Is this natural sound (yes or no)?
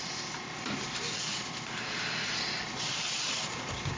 no